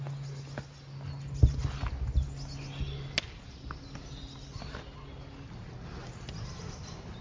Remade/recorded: recorded